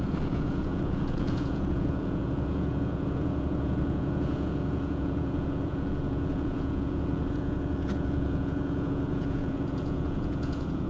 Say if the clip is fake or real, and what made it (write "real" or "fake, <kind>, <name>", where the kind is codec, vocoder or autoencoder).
fake, vocoder, Vocos